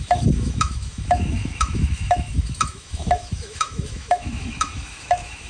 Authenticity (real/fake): fake